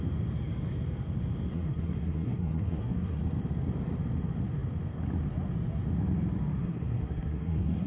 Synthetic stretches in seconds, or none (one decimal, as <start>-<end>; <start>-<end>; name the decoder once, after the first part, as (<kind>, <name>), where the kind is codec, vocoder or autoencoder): 1.5-3.2 (codec, SNAC); 6.6-7.9